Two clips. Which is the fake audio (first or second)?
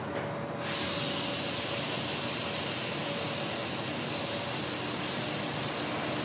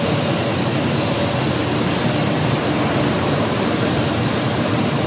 second